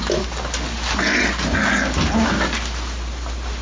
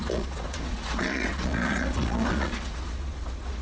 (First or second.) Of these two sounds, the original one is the first